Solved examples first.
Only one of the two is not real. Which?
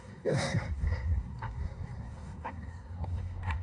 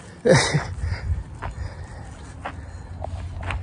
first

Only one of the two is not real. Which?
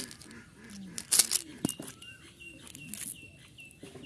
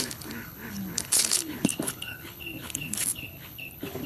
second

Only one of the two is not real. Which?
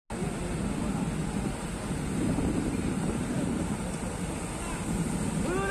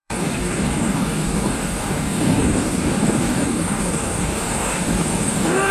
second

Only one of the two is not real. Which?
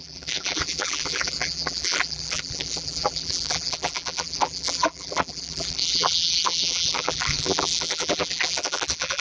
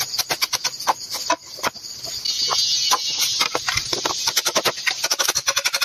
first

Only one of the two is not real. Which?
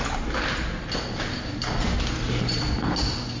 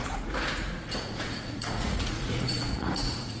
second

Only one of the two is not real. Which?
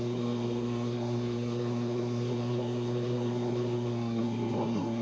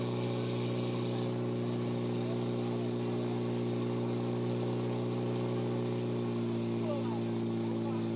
first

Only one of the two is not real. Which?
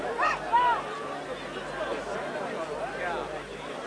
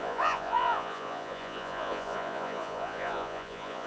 second